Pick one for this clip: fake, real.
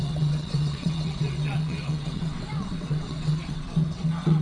fake